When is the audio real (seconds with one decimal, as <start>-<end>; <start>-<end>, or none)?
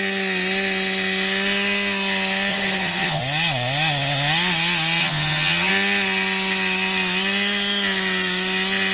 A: 0.0-2.5; 3.2-5.0; 5.7-8.9